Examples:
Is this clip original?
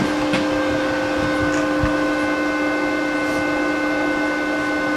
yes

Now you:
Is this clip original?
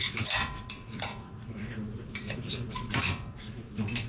no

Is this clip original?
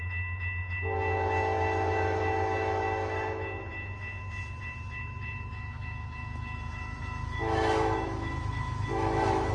no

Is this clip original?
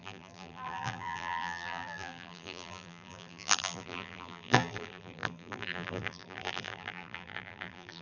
no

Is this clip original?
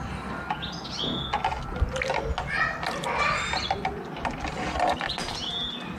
yes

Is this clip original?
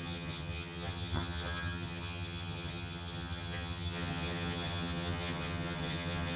no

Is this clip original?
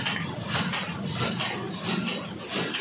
yes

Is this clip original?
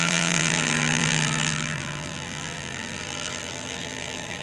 no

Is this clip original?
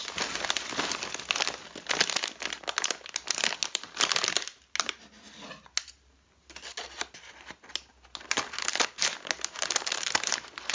yes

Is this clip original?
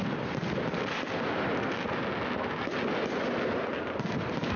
yes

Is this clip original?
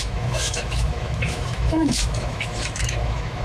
no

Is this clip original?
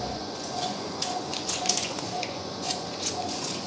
no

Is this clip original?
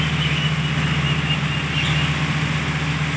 yes